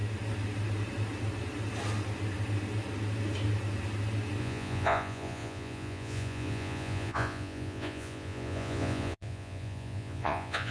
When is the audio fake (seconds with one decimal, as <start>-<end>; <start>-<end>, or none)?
4.4-10.7